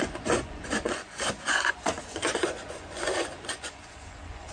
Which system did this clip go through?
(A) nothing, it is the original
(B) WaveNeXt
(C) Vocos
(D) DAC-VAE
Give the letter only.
C